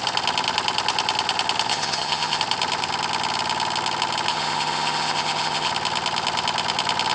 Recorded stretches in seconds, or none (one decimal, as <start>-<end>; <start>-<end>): 0.0-1.7; 2.4-4.3; 5.7-7.1